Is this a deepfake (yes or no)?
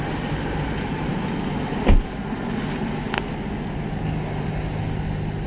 no